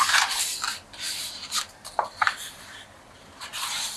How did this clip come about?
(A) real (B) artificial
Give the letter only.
B